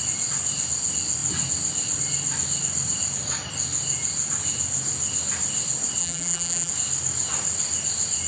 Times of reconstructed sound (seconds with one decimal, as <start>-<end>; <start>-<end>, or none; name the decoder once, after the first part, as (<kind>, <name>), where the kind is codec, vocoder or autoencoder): 6.0-6.7 (vocoder, BigVGAN v2)